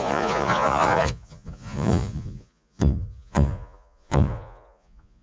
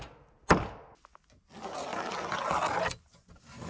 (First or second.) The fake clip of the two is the first